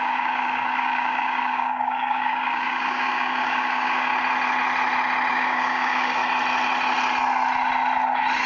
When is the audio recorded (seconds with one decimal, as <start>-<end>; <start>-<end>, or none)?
4.1-5.3; 6.2-8.5